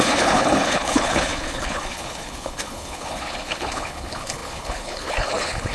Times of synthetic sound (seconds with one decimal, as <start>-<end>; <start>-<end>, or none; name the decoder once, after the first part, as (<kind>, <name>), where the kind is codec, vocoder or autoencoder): 0.0-5.7 (codec, HILCodec)